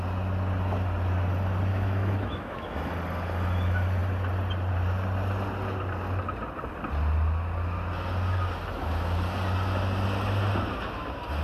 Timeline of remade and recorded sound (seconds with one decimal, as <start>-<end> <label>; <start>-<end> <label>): 0.0-1.7 recorded; 1.7-2.9 remade; 2.9-11.4 recorded